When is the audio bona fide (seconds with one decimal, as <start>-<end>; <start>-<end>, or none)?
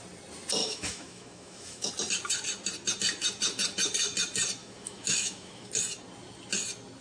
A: 0.0-0.6; 1.9-4.6; 5.7-7.0